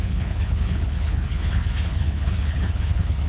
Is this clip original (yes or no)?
no